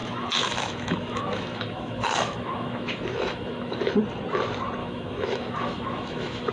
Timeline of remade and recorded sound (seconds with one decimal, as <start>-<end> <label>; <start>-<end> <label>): 0.0-3.9 remade; 3.9-4.8 recorded; 4.8-6.5 remade